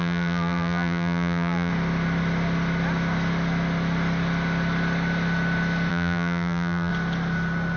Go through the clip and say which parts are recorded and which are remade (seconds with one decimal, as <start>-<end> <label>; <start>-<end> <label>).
0.0-1.7 remade; 1.7-5.9 recorded; 5.9-6.9 remade; 6.9-7.8 recorded